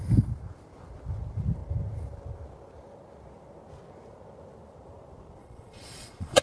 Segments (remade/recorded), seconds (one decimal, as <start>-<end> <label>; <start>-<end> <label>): 0.0-5.4 recorded; 5.4-6.4 remade